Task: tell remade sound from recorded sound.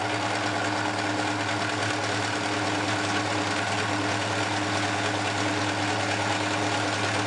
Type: recorded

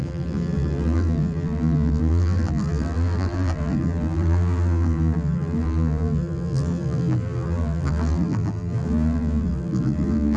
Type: remade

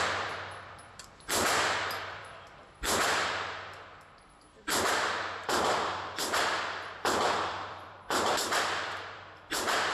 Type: remade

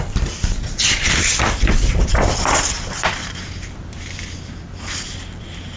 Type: remade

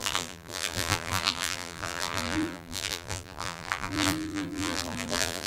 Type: remade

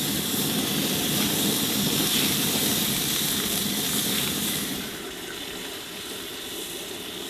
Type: remade